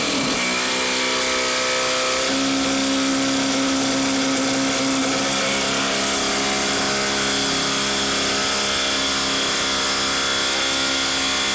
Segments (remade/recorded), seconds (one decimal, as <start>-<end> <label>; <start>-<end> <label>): 0.0-11.5 recorded